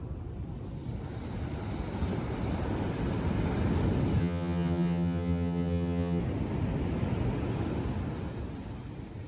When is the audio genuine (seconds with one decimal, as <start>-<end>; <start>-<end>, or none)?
0.0-4.2; 6.2-9.3